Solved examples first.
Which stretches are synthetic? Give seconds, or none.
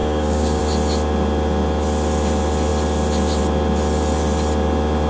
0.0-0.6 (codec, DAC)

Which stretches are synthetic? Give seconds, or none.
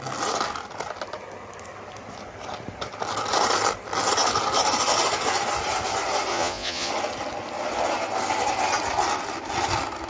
6.3-6.9 (vocoder, Vocos)